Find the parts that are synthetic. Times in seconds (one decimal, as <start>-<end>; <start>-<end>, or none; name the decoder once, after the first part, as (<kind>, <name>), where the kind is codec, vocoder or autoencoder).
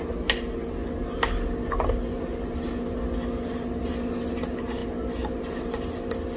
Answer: none